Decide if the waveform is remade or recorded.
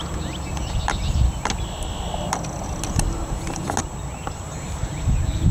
recorded